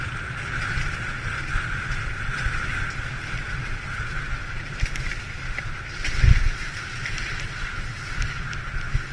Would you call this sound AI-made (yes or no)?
no